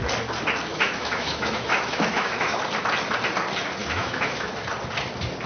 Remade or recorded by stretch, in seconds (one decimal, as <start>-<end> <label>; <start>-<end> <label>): 0.0-0.7 recorded; 0.7-2.6 remade; 2.6-3.8 recorded; 3.8-4.5 remade; 4.5-5.5 recorded